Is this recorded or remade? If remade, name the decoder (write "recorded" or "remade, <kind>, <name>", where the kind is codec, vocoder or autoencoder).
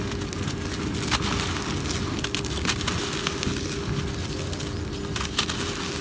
recorded